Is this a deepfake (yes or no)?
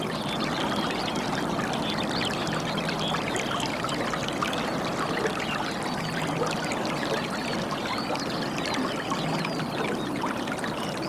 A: no